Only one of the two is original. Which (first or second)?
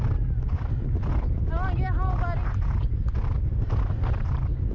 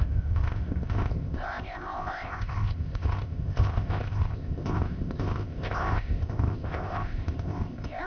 first